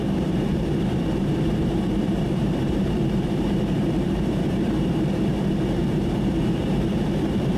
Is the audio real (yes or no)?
no